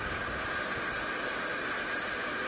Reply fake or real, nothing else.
real